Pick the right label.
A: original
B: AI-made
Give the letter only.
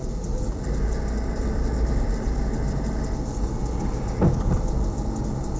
A